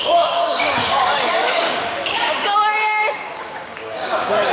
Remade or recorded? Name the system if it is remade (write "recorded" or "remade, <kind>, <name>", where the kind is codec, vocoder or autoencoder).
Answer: remade, codec, DAC